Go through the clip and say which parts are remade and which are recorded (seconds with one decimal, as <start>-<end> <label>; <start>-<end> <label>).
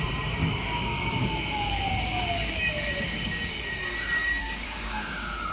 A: 0.0-0.4 recorded; 0.4-3.6 remade; 3.6-4.4 recorded; 4.4-5.5 remade